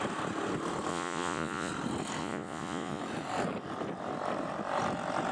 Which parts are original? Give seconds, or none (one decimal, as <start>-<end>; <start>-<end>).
0.0-0.9; 1.7-2.2; 3.0-5.3